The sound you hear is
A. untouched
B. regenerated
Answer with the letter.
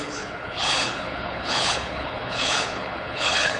B